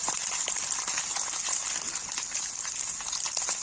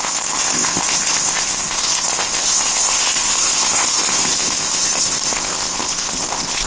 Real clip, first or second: first